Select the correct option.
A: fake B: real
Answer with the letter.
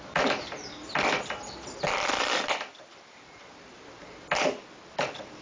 B